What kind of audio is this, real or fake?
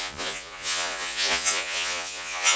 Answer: fake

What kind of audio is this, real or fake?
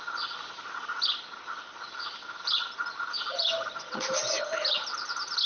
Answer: real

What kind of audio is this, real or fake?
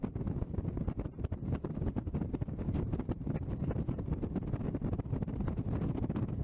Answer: fake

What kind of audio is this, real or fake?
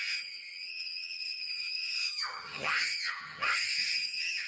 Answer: fake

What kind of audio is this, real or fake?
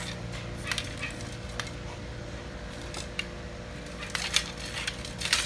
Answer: real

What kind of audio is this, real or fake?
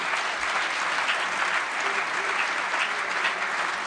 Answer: real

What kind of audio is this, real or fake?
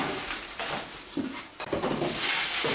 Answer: fake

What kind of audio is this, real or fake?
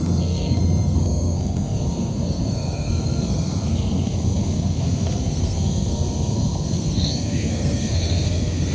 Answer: fake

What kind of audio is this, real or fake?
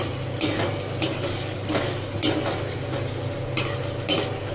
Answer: real